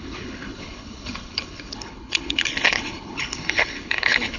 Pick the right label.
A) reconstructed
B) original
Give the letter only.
A